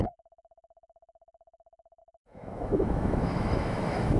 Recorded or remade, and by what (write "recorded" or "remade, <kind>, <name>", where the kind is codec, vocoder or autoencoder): remade, autoencoder, DAC-VAE